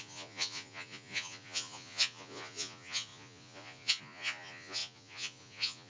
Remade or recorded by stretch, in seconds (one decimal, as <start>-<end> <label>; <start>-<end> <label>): 0.0-5.9 remade